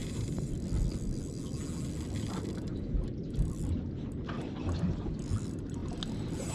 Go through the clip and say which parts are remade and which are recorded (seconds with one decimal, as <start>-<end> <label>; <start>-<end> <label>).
0.0-0.5 remade; 0.5-6.5 recorded